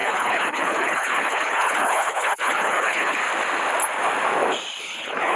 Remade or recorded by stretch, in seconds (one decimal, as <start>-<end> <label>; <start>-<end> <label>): 0.0-3.2 remade; 3.2-4.8 recorded; 4.8-5.4 remade